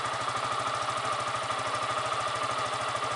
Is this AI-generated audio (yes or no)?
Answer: no